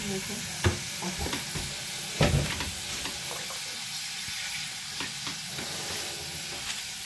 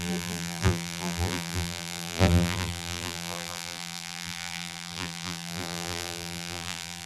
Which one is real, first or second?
first